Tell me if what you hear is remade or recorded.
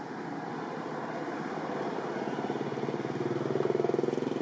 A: recorded